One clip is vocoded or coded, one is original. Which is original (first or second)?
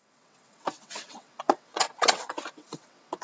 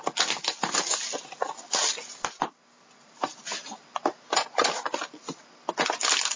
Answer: second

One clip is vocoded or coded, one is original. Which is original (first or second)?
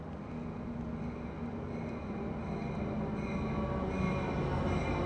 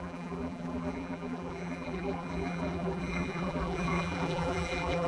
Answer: first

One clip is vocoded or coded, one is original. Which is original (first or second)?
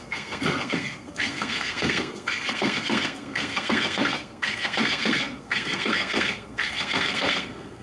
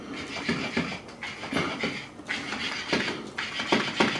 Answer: second